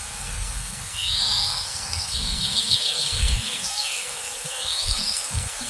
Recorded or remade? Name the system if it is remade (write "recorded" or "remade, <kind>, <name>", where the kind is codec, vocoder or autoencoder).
remade, codec, SNAC